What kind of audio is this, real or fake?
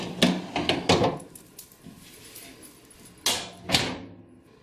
real